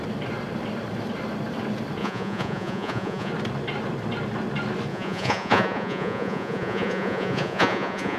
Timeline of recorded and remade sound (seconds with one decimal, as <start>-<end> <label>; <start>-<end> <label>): 0.0-2.0 recorded; 2.0-3.3 remade; 3.3-4.9 recorded; 4.9-8.2 remade